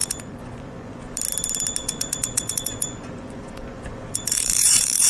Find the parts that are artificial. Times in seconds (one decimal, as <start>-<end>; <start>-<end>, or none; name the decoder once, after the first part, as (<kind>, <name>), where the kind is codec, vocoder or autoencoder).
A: 0.0-1.1 (vocoder, Vocos); 1.8-5.1